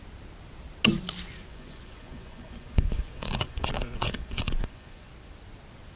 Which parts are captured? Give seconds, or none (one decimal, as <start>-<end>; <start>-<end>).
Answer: 0.0-1.5; 5.1-6.0